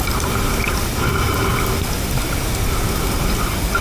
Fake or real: real